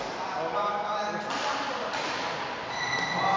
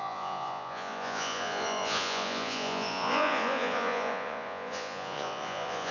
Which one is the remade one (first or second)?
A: second